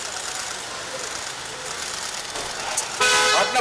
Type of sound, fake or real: real